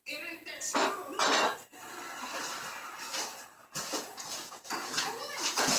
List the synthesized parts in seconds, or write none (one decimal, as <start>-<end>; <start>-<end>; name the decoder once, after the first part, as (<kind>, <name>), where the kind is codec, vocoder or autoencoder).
3.6-5.8 (vocoder, Vocos)